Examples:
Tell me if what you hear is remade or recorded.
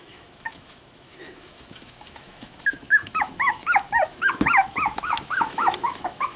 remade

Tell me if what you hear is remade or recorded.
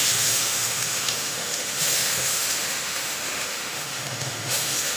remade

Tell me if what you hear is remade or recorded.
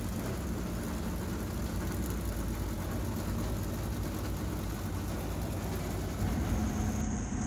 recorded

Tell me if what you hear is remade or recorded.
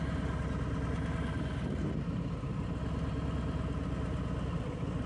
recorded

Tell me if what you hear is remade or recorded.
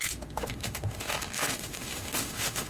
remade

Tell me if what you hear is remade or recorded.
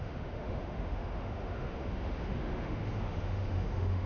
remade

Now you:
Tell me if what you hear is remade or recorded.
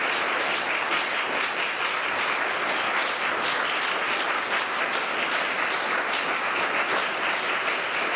recorded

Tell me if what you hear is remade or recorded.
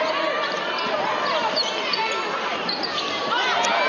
recorded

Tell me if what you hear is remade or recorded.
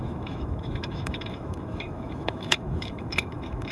remade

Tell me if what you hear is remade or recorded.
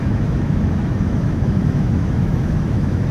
remade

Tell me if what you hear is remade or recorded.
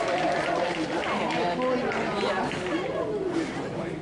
recorded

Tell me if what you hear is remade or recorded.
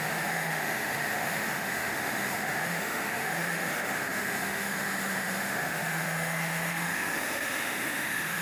remade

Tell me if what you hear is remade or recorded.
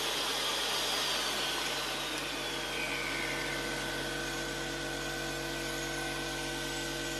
recorded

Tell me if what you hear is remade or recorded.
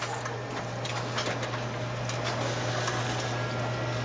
recorded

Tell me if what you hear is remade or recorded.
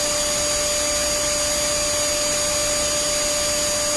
recorded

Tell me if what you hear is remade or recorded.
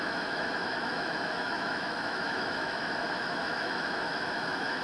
remade